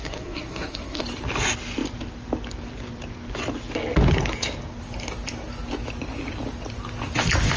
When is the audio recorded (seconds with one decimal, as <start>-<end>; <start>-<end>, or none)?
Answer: 1.0-7.6